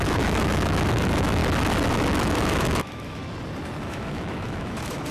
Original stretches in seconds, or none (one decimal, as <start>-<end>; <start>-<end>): 1.4-1.9; 3.2-3.8